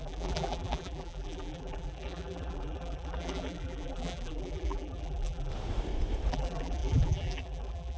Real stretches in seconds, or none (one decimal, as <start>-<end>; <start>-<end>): 5.5-6.3